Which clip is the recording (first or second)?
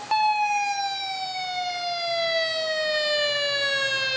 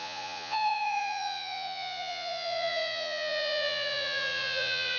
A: first